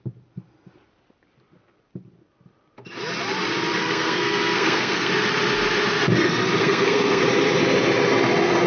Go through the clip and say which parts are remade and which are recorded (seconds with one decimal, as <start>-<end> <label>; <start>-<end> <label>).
0.0-3.8 recorded; 3.8-5.1 remade; 5.1-6.6 recorded; 6.6-7.2 remade; 7.2-8.7 recorded